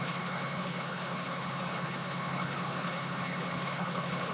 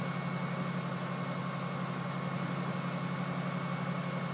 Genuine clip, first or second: second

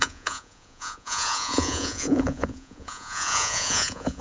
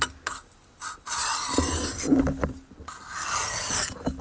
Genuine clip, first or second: second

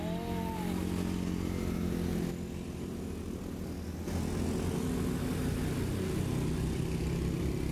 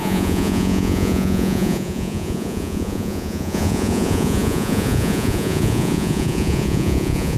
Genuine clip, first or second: first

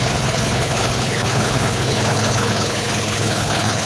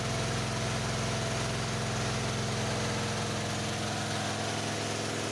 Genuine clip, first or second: second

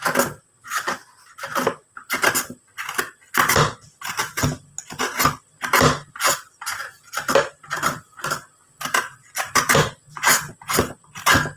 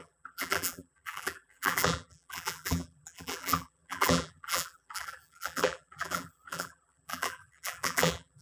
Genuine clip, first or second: first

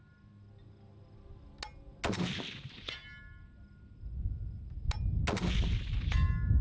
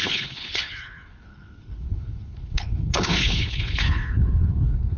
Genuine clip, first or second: first